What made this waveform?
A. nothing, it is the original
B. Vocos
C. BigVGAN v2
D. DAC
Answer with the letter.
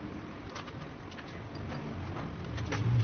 A